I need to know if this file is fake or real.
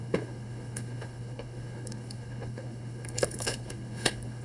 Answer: fake